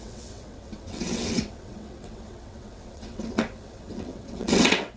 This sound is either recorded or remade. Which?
remade